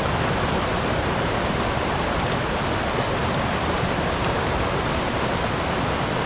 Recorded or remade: recorded